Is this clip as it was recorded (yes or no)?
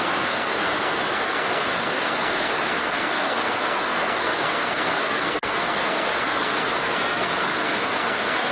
no